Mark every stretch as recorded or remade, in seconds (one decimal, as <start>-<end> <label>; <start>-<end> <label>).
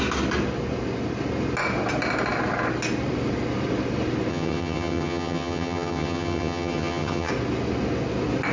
0.0-4.3 recorded; 4.3-7.3 remade; 7.3-8.5 recorded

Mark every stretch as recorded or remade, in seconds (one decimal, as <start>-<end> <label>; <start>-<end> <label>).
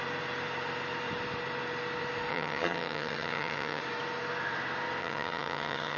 0.0-2.3 recorded; 2.3-3.8 remade; 3.8-5.0 recorded; 5.0-6.0 remade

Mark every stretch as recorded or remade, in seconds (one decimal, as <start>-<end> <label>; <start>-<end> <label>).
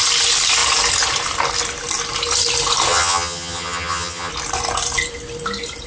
0.0-2.9 recorded; 2.9-4.3 remade; 4.3-5.9 recorded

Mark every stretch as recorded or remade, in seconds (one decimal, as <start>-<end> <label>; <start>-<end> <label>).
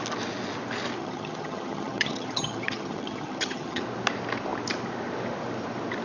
0.0-1.0 recorded; 1.0-3.8 remade; 3.8-6.0 recorded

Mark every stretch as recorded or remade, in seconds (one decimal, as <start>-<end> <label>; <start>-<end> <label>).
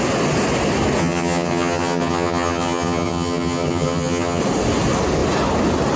0.0-1.0 recorded; 1.0-4.4 remade; 4.4-6.0 recorded